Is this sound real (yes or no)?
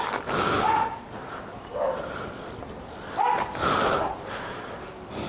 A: yes